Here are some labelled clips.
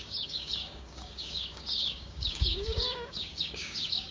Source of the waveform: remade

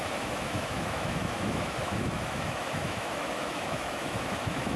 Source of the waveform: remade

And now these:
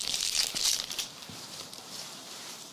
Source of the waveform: remade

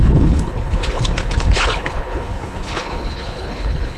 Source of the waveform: remade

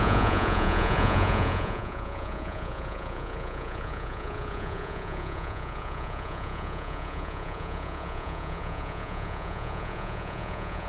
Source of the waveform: remade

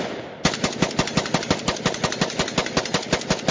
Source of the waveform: recorded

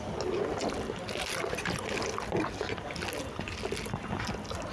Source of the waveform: recorded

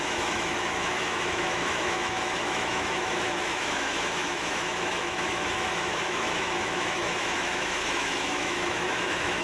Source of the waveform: remade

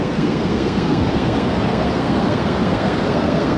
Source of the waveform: remade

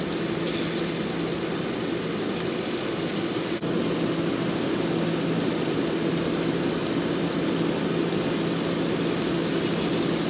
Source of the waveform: recorded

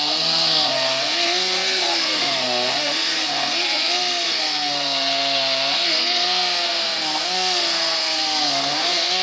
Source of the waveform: remade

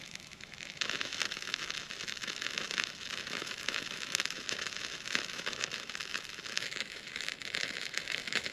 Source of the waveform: remade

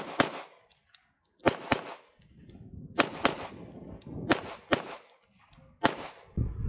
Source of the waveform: recorded